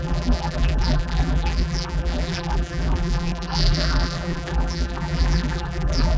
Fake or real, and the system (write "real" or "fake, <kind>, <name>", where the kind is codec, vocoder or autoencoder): fake, vocoder, BigVGAN v2